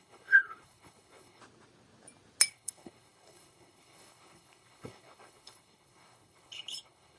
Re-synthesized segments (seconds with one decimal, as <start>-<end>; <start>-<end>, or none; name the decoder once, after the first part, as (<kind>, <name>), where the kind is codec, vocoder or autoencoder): 0.0-1.4 (codec, HILCodec); 2.5-7.2